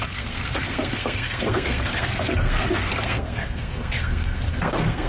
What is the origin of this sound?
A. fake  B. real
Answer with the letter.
A